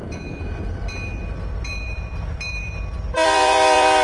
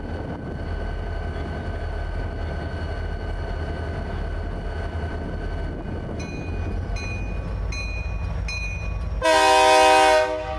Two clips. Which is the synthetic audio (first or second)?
first